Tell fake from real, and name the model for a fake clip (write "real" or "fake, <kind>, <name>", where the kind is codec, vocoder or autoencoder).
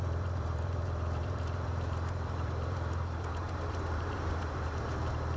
fake, vocoder, BigVGAN v2